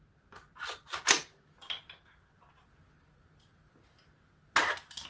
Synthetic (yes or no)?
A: no